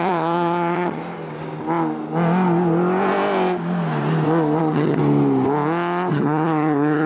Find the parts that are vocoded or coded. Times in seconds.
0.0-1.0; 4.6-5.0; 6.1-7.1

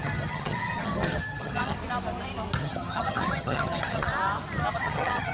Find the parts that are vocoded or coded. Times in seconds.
0.0-1.8; 2.6-4.1; 4.7-5.3

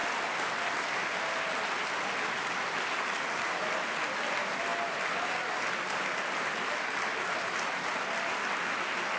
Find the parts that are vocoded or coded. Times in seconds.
none

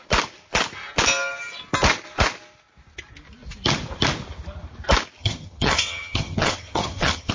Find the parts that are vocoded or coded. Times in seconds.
5.2-7.3

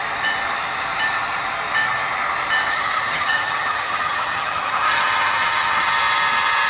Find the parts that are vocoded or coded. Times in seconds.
2.7-5.9